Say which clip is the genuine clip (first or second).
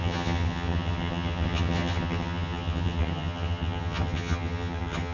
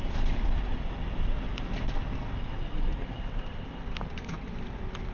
second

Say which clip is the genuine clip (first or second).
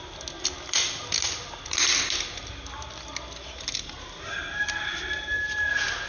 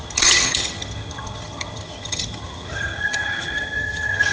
first